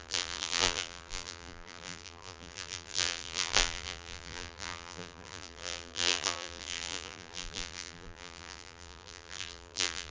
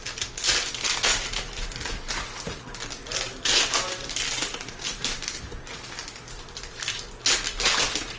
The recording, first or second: second